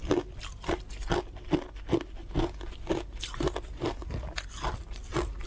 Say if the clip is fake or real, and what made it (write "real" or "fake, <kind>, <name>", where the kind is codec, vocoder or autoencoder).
real